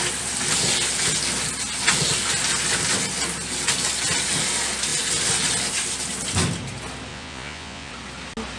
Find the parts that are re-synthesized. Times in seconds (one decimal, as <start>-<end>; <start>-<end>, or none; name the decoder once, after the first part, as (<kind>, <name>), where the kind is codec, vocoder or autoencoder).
7.1-7.9 (vocoder, Vocos)